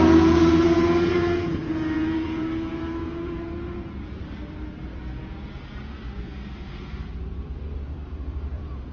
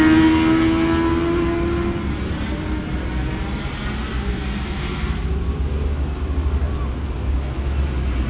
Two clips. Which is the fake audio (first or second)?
first